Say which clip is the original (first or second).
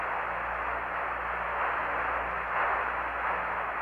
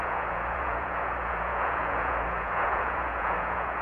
first